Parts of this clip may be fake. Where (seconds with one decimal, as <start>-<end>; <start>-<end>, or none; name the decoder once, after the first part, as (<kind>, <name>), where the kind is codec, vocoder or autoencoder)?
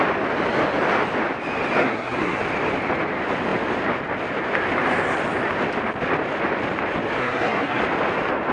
1.8-2.4 (codec, SNAC); 7.2-7.8